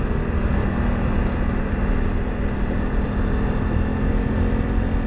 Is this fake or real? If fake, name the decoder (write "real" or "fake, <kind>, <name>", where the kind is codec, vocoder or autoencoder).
real